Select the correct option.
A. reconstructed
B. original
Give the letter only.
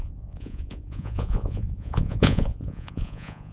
A